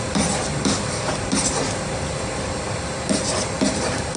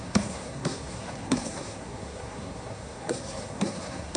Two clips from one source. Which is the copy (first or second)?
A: second